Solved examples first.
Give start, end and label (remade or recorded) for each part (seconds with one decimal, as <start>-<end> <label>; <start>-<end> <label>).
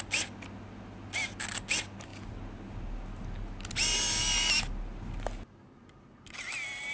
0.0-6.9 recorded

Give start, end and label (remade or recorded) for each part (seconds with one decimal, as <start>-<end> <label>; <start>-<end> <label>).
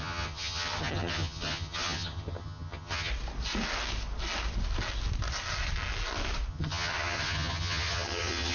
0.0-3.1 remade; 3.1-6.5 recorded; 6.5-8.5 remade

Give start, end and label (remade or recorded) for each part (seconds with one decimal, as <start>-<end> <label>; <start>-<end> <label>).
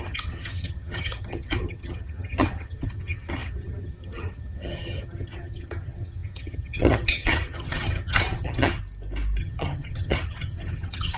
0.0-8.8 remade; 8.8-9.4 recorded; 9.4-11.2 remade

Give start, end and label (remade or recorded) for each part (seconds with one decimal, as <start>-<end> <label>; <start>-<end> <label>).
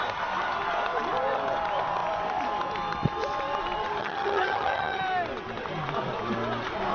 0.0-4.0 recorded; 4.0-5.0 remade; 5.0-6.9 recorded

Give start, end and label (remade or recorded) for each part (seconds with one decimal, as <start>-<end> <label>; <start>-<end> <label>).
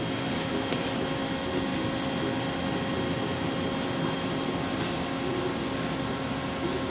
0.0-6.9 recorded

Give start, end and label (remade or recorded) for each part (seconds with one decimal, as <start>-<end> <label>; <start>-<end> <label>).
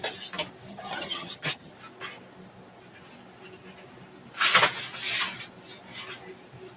0.0-0.7 recorded; 0.7-1.7 remade; 1.7-6.8 recorded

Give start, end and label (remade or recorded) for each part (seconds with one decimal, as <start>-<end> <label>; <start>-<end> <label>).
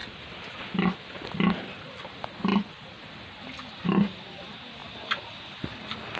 0.0-6.2 recorded